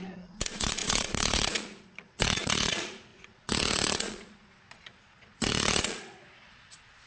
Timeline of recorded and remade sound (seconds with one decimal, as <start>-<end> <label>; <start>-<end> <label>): 0.0-7.1 remade